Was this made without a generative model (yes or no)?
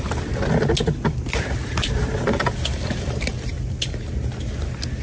yes